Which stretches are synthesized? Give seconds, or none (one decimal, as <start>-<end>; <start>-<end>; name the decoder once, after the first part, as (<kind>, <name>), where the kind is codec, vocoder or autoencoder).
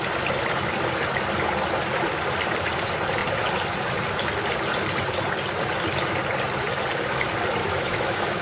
7.6-8.4 (autoencoder, DAC-VAE)